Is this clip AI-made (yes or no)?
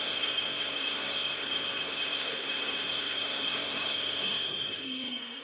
yes